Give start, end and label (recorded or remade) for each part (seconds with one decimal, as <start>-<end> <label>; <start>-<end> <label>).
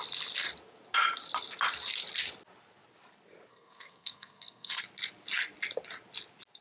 0.0-3.5 recorded; 3.5-4.8 remade; 4.8-6.6 recorded